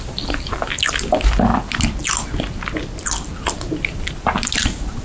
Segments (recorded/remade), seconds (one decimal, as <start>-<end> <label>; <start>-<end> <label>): 0.0-5.0 recorded